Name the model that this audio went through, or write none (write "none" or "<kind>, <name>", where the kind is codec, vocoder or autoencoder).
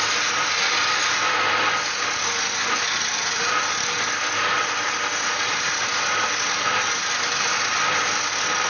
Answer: none